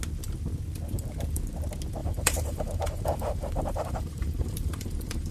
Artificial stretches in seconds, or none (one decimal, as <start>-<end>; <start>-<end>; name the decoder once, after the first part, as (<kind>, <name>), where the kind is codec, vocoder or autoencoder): 2.0-5.3 (vocoder, BigVGAN v2)